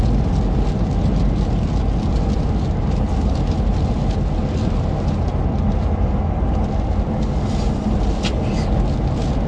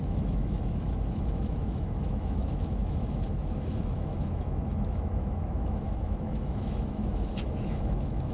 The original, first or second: first